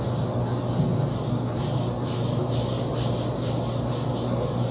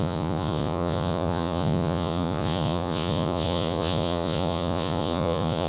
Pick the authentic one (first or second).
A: first